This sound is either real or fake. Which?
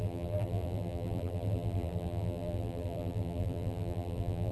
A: fake